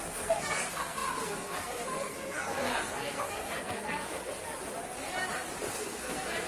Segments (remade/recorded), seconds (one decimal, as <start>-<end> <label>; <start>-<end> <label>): 0.0-4.3 remade; 4.3-5.7 recorded; 5.7-6.5 remade